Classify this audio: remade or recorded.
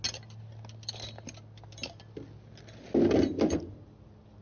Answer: recorded